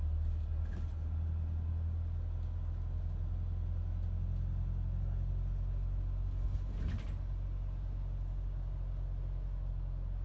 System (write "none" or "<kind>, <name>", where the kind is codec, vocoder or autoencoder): none